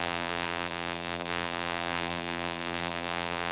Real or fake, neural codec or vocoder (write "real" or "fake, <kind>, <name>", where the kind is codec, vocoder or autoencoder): fake, vocoder, BigVGAN v2